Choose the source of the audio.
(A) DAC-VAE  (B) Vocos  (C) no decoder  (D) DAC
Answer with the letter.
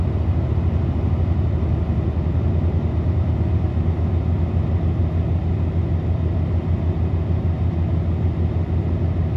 C